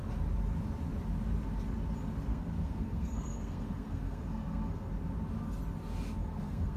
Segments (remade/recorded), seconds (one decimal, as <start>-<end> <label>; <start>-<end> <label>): 0.0-2.3 recorded; 2.3-4.9 remade; 4.9-6.2 recorded; 6.2-6.8 remade